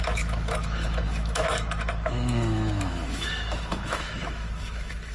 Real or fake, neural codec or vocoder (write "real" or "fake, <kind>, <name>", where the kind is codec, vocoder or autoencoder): fake, autoencoder, DAC-VAE